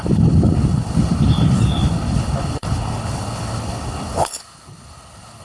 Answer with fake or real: fake